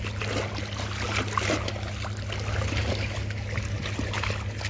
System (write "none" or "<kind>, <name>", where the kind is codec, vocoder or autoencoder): none